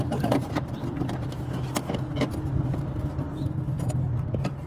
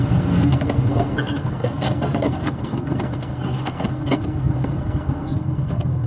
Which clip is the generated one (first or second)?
second